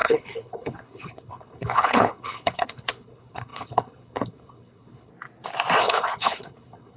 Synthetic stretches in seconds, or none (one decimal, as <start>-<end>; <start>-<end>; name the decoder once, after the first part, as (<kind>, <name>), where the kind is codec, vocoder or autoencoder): 0.0-5.1 (codec, HILCodec); 5.8-7.0